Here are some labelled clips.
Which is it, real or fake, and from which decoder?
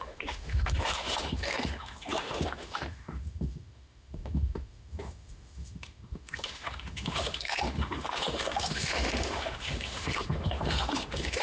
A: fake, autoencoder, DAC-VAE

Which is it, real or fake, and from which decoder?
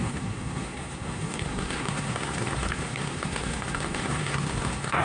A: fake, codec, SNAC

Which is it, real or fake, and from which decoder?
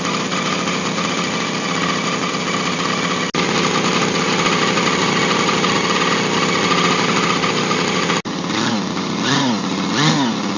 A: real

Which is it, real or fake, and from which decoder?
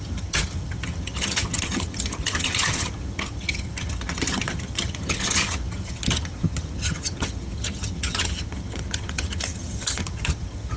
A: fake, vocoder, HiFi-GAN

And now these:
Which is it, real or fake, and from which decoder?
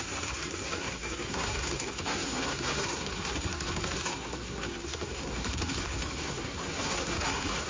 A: fake, codec, SNAC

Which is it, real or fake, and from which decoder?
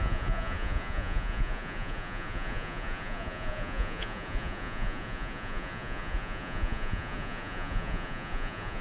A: fake, vocoder, Vocos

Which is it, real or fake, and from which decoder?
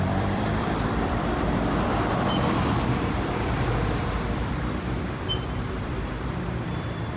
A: fake, vocoder, BigVGAN v2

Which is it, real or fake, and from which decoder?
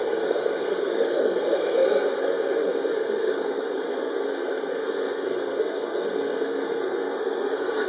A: fake, codec, SNAC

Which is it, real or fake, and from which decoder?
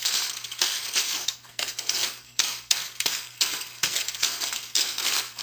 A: fake, codec, SNAC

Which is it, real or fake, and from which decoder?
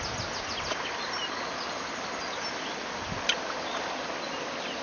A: real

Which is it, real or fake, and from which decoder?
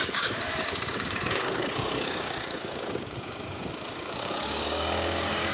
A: fake, codec, DAC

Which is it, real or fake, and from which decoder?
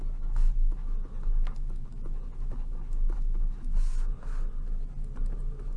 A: real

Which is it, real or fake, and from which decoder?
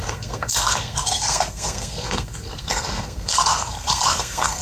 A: fake, codec, SNAC